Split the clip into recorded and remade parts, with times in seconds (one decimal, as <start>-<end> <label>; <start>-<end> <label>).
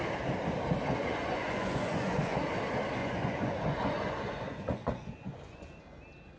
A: 0.0-1.0 recorded; 1.0-2.4 remade; 2.4-3.0 recorded; 3.0-5.8 remade; 5.8-6.4 recorded